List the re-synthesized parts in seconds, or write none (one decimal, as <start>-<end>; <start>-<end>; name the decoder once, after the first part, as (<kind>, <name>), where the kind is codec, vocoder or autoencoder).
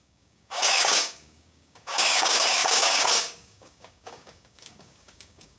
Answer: 0.0-5.6 (codec, DAC)